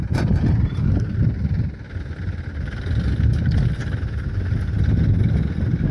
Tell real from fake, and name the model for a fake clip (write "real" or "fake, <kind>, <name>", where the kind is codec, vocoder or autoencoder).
real